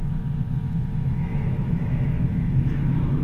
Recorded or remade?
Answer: remade